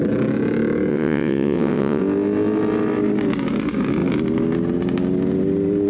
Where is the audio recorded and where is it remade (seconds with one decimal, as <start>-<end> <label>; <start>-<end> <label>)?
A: 0.0-0.9 recorded; 0.9-2.0 remade; 2.0-5.9 recorded